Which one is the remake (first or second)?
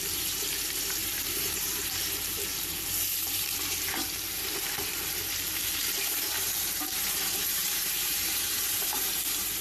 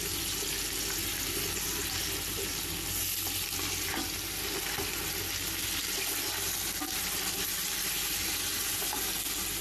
first